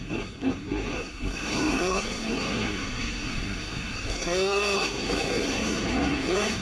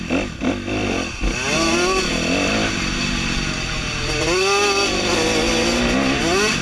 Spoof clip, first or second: first